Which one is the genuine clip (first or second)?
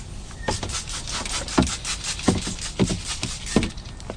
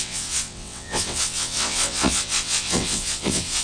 first